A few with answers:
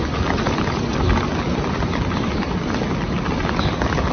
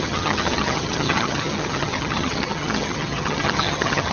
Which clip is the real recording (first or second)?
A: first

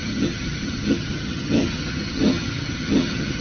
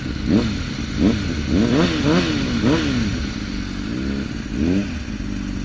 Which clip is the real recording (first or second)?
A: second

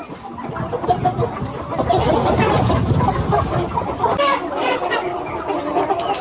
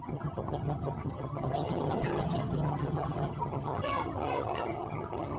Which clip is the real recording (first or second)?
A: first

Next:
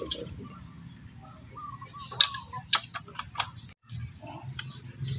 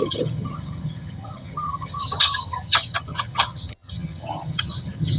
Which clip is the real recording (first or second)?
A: first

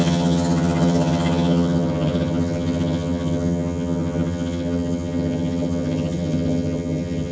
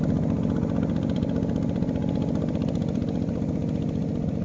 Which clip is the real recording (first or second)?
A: second